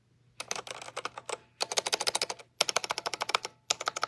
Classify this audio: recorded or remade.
recorded